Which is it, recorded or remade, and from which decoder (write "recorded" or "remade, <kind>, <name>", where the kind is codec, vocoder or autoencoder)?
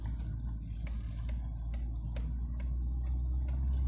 recorded